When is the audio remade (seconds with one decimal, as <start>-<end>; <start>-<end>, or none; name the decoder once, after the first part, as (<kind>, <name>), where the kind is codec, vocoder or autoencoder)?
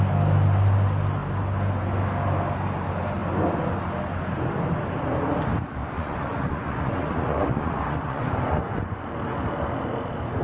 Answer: 5.8-9.1 (vocoder, Vocos)